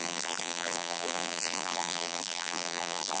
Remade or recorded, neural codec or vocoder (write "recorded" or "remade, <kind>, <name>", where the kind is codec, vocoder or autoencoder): remade, vocoder, BigVGAN v2